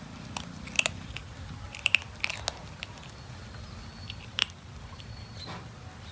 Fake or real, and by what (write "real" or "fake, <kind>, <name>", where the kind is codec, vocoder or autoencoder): real